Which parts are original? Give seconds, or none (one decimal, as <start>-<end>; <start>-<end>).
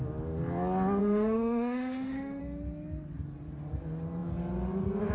0.0-1.0; 2.4-5.1